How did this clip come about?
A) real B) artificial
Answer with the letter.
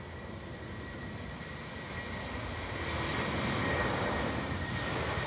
A